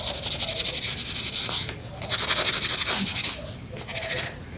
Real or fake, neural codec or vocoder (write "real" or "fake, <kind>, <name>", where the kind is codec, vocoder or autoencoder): real